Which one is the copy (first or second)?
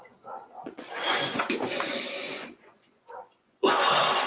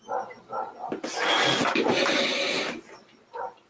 first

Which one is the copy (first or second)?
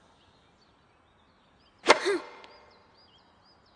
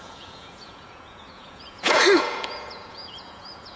second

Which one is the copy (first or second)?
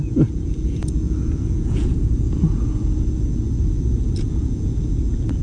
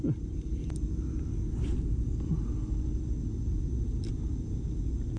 first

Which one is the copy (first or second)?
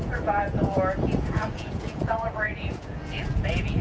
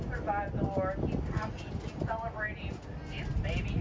first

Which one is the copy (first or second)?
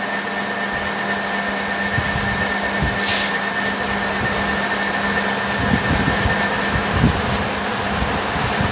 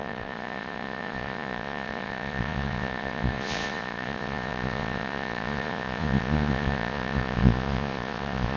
second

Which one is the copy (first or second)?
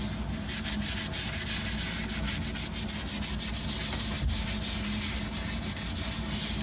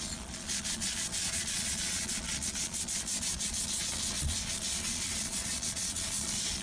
second